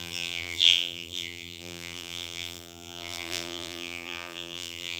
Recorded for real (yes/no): no